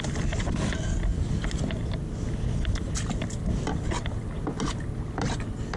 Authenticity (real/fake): real